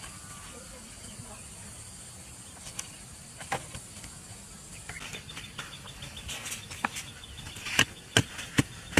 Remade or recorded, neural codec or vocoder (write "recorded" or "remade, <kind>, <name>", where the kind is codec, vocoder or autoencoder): recorded